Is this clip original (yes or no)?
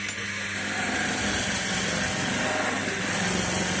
yes